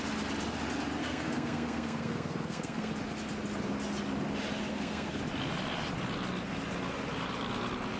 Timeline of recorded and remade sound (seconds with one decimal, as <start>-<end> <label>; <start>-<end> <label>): 0.0-1.0 recorded; 1.0-2.9 remade; 2.9-4.7 recorded; 4.7-5.2 remade; 5.2-8.0 recorded